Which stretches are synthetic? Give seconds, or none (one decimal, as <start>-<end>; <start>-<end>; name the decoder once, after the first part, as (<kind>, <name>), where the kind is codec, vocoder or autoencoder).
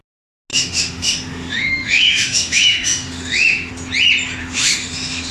0.5-3.7 (autoencoder, DAC-VAE); 4.4-5.3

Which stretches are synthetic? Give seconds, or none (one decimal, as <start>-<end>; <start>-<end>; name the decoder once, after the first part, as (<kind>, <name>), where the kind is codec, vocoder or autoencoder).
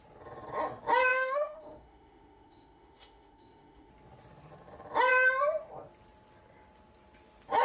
1.1-3.9 (autoencoder, DAC-VAE)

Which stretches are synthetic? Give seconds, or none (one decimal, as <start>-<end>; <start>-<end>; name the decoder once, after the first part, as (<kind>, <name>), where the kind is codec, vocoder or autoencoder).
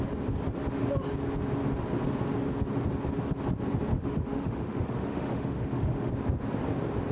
3.9-6.1 (autoencoder, DAC-VAE)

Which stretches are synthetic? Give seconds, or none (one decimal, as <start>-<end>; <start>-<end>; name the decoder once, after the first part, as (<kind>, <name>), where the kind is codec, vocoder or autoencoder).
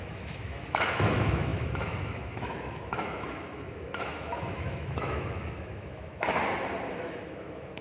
0.0-6.4 (autoencoder, DAC-VAE); 6.9-7.8